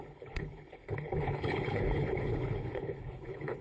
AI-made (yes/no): yes